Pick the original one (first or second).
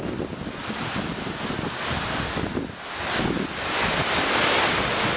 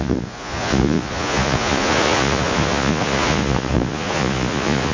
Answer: first